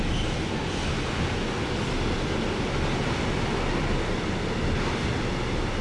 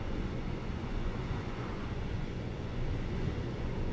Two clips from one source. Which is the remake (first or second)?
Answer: second